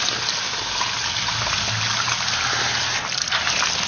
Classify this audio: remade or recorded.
recorded